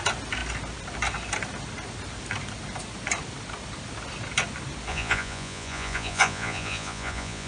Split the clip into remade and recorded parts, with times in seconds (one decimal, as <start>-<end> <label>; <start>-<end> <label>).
0.0-4.9 recorded; 4.9-7.5 remade